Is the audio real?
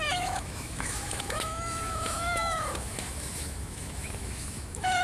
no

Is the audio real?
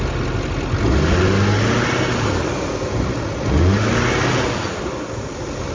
yes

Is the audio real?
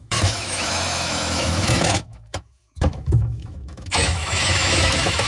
no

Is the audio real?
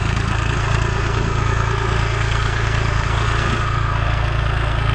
no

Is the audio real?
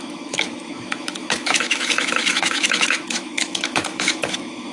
no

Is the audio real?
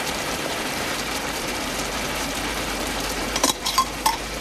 no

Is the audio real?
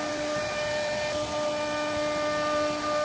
yes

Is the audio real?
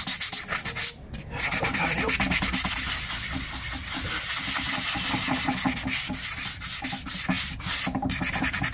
yes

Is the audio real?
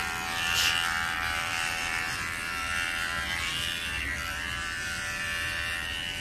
no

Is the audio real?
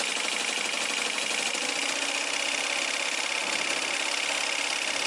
yes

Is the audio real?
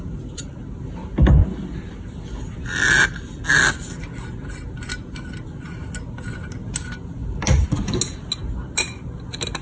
yes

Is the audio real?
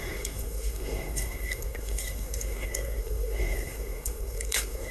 no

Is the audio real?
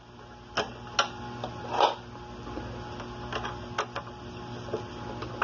yes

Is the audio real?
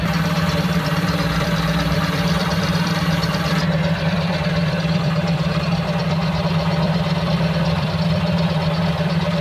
no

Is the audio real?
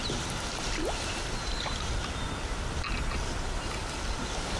yes